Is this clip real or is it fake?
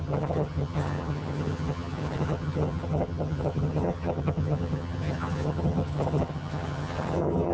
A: fake